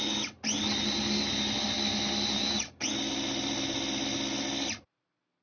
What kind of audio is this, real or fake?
real